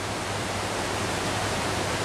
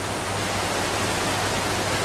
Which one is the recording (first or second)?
second